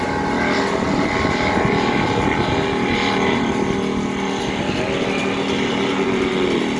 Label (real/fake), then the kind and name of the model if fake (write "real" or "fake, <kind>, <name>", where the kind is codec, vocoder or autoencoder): real